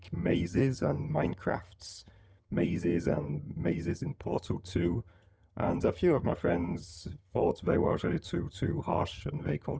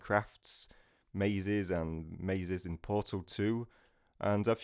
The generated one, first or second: first